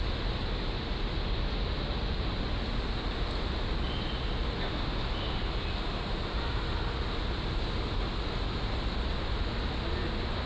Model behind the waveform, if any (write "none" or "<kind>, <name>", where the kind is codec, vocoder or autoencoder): none